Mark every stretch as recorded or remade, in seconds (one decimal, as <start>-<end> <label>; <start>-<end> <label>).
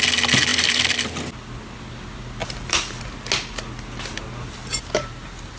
0.0-0.5 recorded; 0.5-1.2 remade; 1.2-2.4 recorded; 2.4-3.2 remade; 3.2-4.6 recorded; 4.6-5.1 remade; 5.1-5.6 recorded